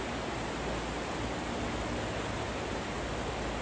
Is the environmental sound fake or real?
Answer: real